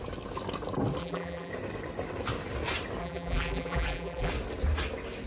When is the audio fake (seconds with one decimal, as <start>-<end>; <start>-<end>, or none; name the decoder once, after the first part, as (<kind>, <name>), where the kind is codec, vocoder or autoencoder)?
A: 1.0-1.5 (vocoder, BigVGAN v2); 3.0-4.3

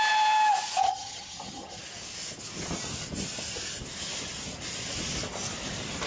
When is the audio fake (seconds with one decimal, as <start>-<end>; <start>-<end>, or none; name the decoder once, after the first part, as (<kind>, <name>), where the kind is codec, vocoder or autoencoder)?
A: 0.8-1.8 (vocoder, HiFi-GAN)

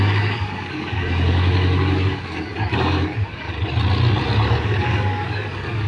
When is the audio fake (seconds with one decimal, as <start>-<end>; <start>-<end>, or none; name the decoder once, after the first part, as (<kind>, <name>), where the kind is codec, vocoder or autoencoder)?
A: 0.0-3.5 (codec, DAC); 4.6-5.9

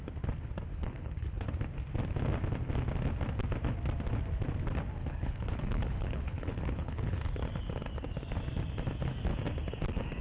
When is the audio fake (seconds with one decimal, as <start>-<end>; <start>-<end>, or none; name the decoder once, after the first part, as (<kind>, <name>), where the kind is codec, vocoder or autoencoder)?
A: 0.7-1.5 (codec, HILCodec); 5.0-7.2

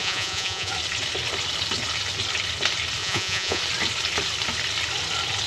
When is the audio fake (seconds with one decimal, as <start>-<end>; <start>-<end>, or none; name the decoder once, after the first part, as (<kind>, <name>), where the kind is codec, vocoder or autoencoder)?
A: 0.0-0.7 (vocoder, Vocos); 3.0-3.6

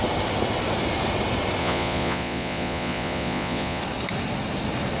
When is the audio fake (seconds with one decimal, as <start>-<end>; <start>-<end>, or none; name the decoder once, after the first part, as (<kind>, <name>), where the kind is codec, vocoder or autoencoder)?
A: 1.6-3.8 (vocoder, Vocos)